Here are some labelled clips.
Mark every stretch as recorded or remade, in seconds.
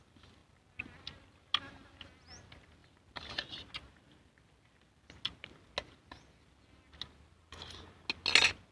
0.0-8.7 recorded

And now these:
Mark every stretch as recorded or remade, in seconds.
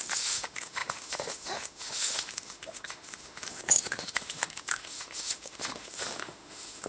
0.0-6.9 remade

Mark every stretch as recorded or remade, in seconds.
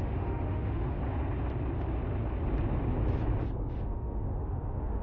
0.0-1.0 remade; 1.0-3.7 recorded; 3.7-5.0 remade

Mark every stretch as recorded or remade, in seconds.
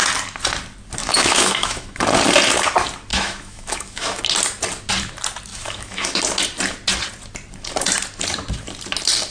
0.0-1.0 recorded; 1.0-2.0 remade; 2.0-3.1 recorded; 3.1-4.2 remade; 4.2-5.5 recorded; 5.5-6.2 remade; 6.2-9.3 recorded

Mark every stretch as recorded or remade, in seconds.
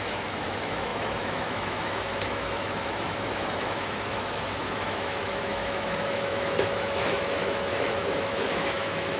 0.0-9.2 remade